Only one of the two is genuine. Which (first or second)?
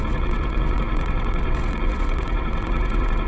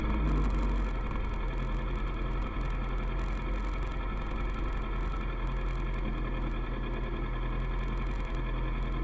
second